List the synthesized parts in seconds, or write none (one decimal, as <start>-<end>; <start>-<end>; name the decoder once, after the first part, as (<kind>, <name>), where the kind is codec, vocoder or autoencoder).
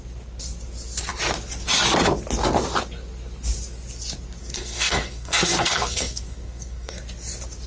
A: 4.4-6.9 (codec, SNAC)